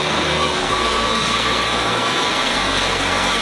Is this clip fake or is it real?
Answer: fake